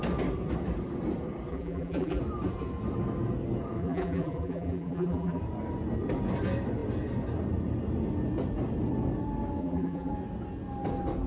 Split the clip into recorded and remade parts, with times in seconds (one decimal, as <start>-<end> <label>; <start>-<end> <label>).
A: 0.0-1.5 recorded; 1.5-2.2 remade; 2.2-3.8 recorded; 3.8-5.4 remade; 5.4-9.6 recorded; 9.6-10.1 remade; 10.1-11.3 recorded